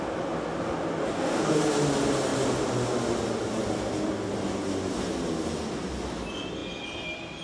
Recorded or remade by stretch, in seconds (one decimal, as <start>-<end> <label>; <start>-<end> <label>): 0.0-1.0 recorded; 1.0-1.6 remade; 1.6-7.4 recorded